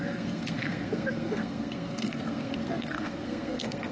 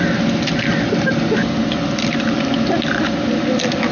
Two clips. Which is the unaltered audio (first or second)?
second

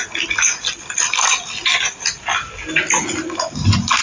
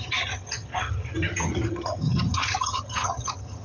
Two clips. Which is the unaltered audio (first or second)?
first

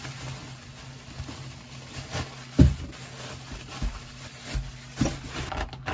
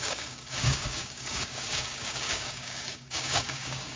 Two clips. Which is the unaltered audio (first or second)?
first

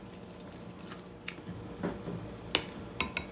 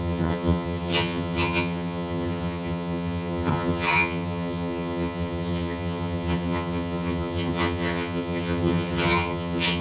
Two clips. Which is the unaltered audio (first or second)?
first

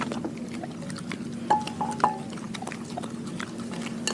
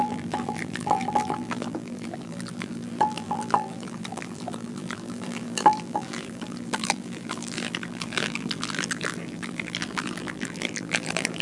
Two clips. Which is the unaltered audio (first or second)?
first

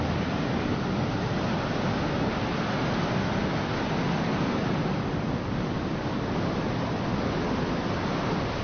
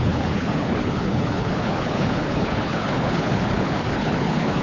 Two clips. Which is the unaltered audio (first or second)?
first